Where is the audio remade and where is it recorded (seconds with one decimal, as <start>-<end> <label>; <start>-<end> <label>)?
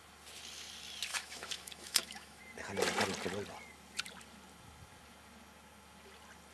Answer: 0.0-1.1 recorded; 1.1-2.4 remade; 2.4-6.5 recorded